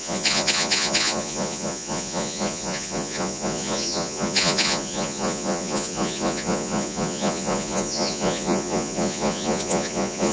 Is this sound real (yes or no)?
no